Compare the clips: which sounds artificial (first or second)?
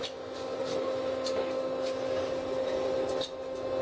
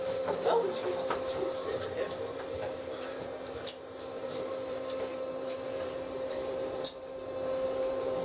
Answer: second